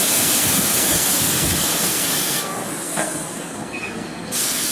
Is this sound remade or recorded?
remade